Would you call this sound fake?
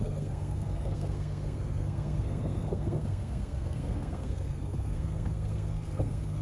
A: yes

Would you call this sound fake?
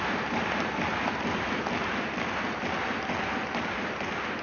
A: no